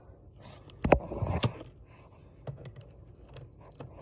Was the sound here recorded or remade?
recorded